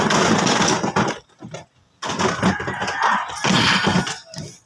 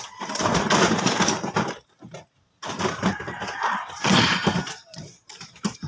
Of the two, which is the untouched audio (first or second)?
first